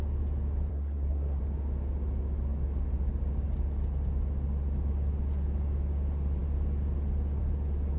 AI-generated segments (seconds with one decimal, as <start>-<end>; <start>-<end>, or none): 0.7-1.4